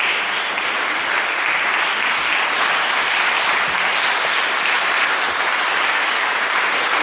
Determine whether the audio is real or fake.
real